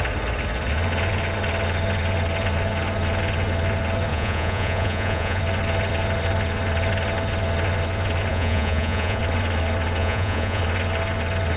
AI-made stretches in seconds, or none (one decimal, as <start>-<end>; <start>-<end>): 4.1-5.4; 8.3-9.2; 10.0-10.6